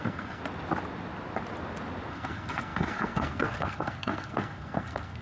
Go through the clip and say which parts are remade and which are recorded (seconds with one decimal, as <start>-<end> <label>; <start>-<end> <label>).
0.0-0.4 remade; 0.4-2.1 recorded; 2.1-5.2 remade